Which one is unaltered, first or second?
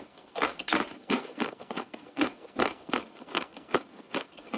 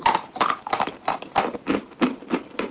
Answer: second